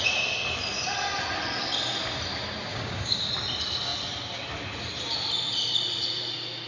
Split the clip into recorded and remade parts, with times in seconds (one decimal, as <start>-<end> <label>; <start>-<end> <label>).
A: 0.0-2.7 recorded; 2.7-3.3 remade; 3.3-6.7 recorded